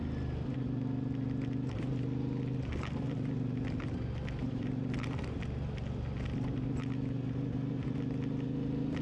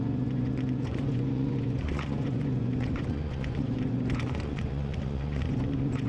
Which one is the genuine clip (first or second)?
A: first